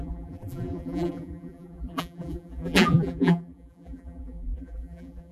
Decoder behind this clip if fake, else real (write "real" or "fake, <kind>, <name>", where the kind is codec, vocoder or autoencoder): fake, vocoder, BigVGAN v2